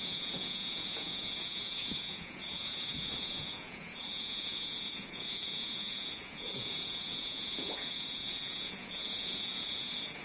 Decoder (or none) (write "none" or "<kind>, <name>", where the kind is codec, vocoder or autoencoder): vocoder, Vocos